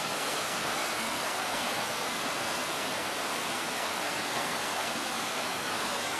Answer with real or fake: fake